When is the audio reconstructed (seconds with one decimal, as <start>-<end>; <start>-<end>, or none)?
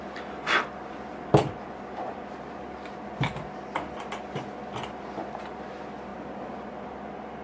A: none